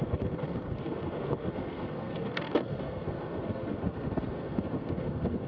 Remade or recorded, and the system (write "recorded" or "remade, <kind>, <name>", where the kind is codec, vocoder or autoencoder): remade, codec, SNAC